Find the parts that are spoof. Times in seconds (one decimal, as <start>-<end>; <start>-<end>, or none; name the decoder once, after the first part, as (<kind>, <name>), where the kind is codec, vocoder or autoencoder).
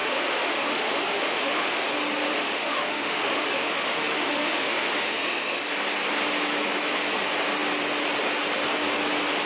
0.0-1.9 (autoencoder, DAC-VAE); 2.3-5.6